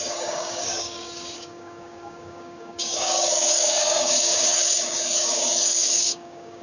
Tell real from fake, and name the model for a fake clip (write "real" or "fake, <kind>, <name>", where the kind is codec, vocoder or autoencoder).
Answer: fake, codec, DAC